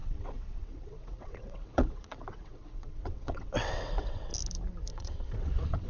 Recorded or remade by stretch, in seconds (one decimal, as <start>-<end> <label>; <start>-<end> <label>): 0.0-4.3 remade; 4.3-4.9 recorded; 4.9-5.9 remade